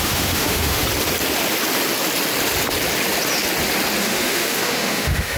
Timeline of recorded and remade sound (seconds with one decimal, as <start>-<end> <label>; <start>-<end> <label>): 0.0-0.8 remade; 0.8-4.0 recorded; 4.0-5.4 remade